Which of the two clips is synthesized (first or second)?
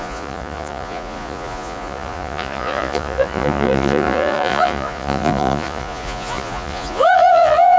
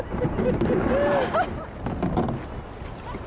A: first